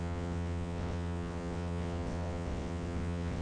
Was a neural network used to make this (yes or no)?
yes